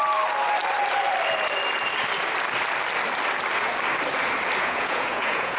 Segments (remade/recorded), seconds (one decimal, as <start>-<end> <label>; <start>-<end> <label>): 0.0-4.6 recorded; 4.6-5.6 remade